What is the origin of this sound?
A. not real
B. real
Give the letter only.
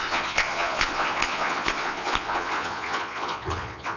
A